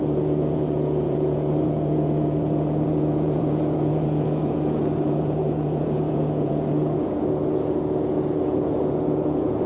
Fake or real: fake